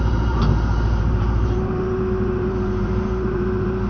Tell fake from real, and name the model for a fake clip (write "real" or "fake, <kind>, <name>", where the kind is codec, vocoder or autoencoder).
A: fake, vocoder, BigVGAN v2